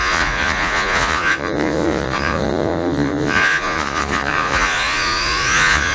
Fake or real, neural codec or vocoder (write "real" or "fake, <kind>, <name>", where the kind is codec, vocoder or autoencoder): fake, vocoder, Vocos